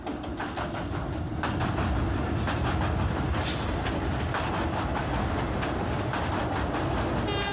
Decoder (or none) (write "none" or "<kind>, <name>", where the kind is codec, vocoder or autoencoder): none